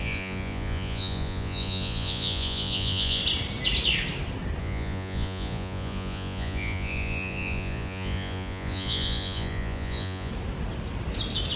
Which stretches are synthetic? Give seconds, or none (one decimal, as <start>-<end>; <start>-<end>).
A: 0.0-3.2; 4.6-10.3